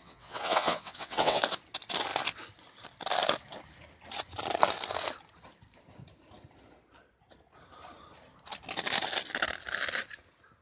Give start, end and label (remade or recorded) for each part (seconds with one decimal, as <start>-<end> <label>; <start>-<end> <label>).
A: 0.0-1.4 remade; 1.4-10.6 recorded